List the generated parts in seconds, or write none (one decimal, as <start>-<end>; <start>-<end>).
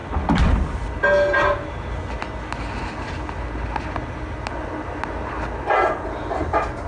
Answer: none